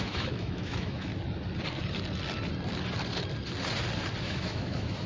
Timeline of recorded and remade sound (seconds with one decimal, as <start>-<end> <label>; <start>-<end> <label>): 0.0-1.1 remade; 1.1-4.2 recorded; 4.2-5.1 remade